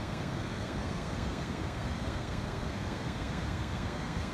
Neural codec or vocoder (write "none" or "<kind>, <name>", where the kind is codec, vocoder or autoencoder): codec, SNAC